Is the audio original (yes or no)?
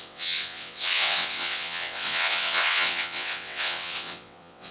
no